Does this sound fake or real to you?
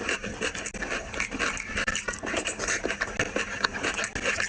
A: real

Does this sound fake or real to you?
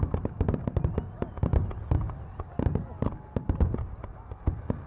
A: real